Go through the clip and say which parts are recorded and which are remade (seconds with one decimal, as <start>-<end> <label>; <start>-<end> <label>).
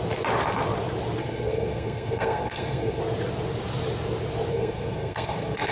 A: 0.0-1.2 recorded; 1.2-3.0 remade; 3.0-4.5 recorded; 4.5-5.7 remade